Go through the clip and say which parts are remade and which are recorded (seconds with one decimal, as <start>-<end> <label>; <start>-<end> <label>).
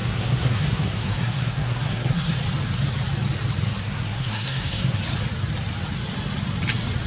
0.0-2.4 remade; 2.4-3.8 recorded; 3.8-5.0 remade; 5.0-7.1 recorded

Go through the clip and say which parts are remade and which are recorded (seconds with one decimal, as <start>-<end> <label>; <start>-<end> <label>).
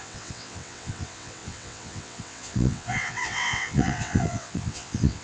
0.0-5.2 remade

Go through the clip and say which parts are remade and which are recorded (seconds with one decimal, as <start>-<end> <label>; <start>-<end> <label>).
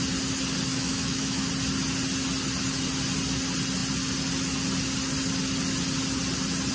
0.0-0.7 recorded; 0.7-1.5 remade; 1.5-6.7 recorded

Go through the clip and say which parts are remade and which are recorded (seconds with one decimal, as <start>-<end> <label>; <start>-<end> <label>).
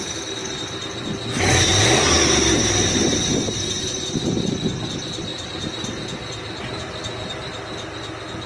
0.0-8.5 recorded